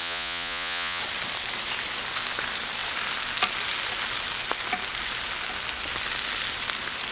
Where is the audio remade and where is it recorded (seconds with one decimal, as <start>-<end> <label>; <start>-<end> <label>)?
0.0-1.0 remade; 1.0-7.1 recorded